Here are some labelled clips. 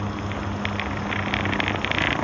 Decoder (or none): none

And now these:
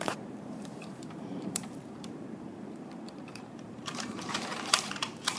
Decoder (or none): vocoder, BigVGAN v2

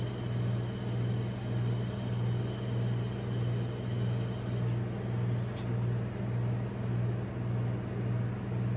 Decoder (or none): none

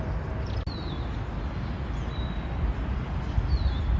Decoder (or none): none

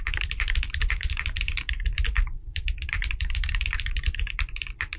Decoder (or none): vocoder, BigVGAN v2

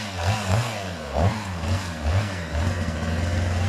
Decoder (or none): codec, SNAC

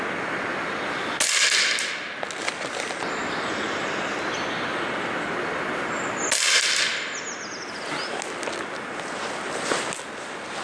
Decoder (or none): none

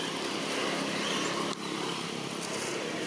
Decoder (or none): none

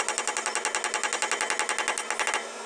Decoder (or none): none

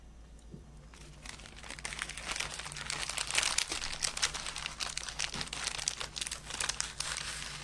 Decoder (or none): none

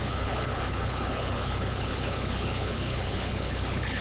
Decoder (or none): codec, HILCodec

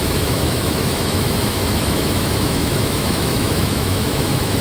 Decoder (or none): autoencoder, DAC-VAE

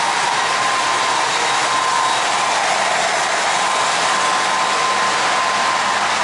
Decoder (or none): none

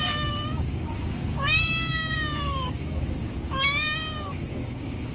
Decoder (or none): codec, DAC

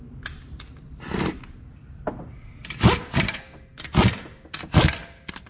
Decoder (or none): none